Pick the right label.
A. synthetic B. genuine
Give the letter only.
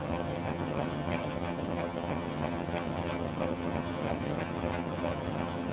A